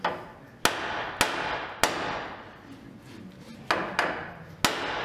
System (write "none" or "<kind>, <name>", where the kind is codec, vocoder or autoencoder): none